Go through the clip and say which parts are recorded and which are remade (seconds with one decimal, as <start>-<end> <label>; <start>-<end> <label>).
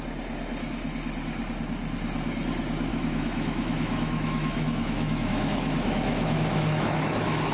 0.0-2.9 recorded; 2.9-7.5 remade